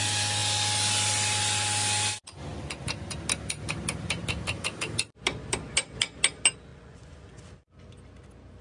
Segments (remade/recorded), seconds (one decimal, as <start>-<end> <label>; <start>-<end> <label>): 0.0-6.7 recorded; 6.7-7.3 remade; 7.3-8.6 recorded